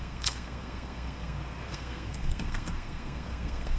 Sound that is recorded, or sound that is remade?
remade